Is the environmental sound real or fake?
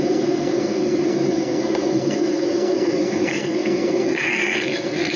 fake